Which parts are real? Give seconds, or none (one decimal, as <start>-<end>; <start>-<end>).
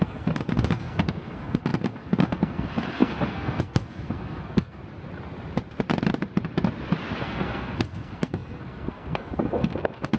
4.8-7.2